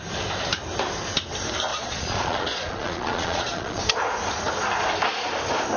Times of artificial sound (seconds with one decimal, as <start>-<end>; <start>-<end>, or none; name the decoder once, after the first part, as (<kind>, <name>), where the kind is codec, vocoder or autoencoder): 1.7-3.8 (vocoder, Vocos)